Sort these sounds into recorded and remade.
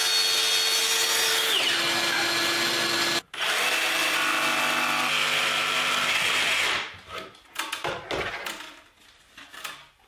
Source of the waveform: recorded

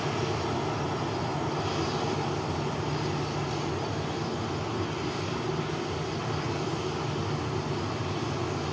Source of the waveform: recorded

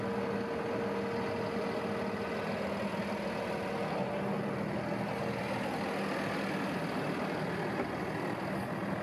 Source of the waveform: recorded